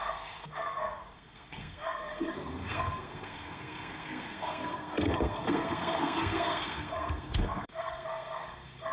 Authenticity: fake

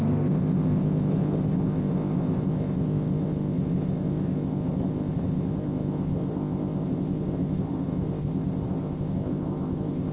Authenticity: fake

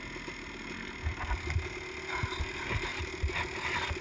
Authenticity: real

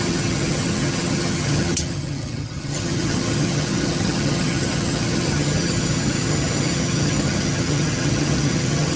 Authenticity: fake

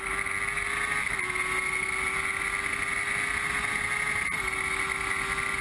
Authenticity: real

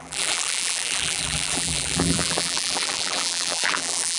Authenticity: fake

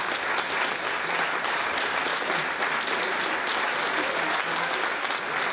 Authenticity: real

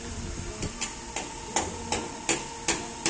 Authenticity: real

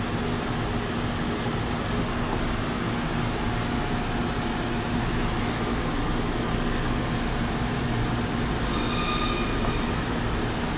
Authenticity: real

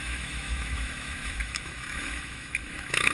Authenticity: fake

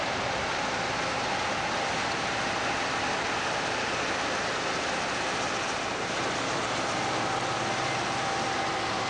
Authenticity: real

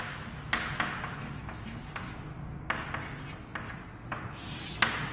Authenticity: real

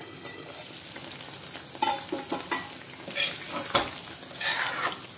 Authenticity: real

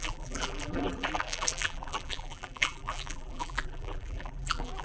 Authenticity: fake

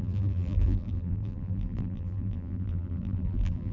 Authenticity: fake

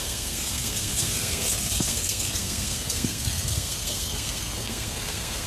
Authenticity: fake